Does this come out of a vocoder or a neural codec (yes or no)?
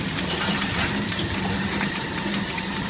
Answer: yes